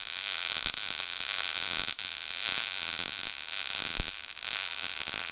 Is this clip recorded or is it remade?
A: recorded